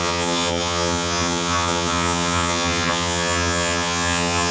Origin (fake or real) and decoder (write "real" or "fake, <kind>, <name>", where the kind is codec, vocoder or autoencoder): fake, vocoder, HiFi-GAN